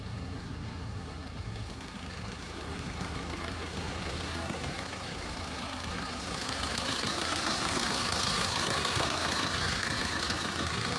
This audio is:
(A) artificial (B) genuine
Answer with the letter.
A